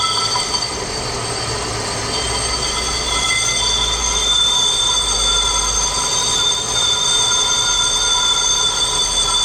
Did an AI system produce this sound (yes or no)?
no